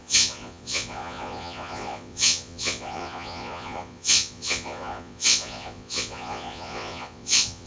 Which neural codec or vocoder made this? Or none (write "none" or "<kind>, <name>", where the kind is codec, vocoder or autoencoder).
vocoder, Vocos